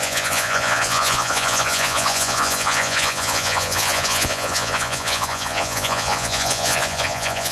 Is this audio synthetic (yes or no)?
yes